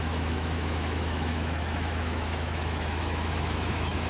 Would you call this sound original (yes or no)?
no